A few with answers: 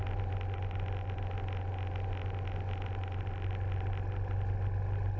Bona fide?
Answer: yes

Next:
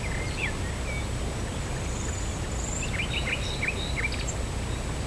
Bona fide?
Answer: yes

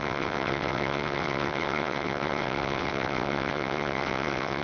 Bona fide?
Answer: no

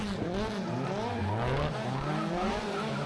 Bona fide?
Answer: yes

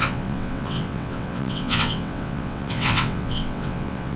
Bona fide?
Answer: no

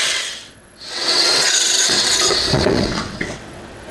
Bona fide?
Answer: no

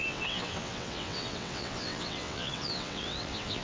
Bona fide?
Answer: no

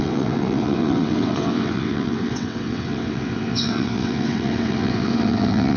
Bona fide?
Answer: no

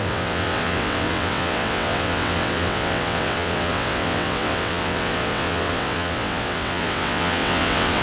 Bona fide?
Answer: no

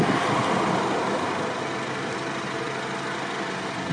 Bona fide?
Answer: yes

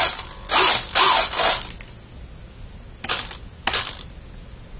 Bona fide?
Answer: yes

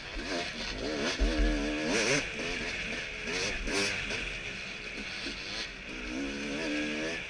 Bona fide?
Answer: yes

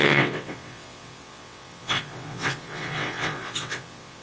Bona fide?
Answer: no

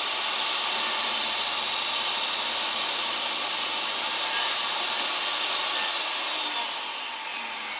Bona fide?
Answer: yes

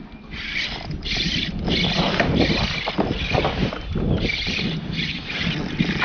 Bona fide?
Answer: yes